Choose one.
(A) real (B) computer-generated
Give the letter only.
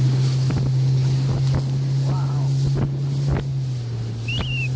A